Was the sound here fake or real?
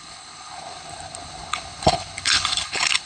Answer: fake